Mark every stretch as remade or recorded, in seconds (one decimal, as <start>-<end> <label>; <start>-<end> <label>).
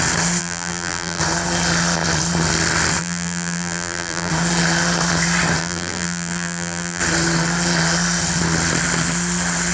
0.0-0.4 recorded; 0.4-1.2 remade; 1.2-3.0 recorded; 3.0-4.3 remade; 4.3-5.6 recorded; 5.6-7.0 remade; 7.0-9.7 recorded